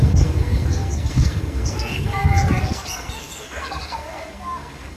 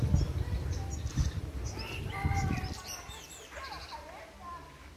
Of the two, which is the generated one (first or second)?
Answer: first